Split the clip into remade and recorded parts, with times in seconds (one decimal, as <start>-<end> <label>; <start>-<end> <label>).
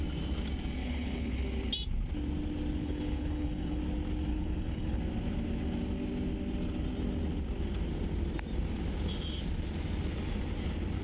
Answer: 0.0-0.8 recorded; 0.8-1.4 remade; 1.4-2.8 recorded; 2.8-3.8 remade; 3.8-4.3 recorded; 4.3-5.0 remade; 5.0-11.0 recorded